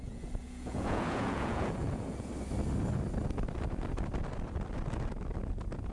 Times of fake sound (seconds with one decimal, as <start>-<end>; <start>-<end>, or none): 0.0-2.3